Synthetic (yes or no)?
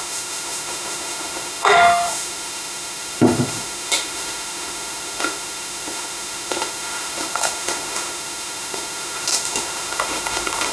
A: yes